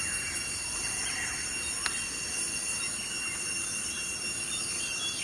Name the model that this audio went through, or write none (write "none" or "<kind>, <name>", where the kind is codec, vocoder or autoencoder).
none